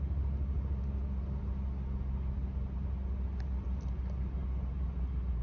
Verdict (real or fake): real